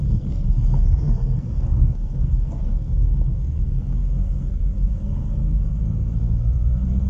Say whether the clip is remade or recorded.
remade